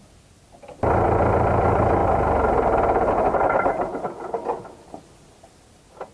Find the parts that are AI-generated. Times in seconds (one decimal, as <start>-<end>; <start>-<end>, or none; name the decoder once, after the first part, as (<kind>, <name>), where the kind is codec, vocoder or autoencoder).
none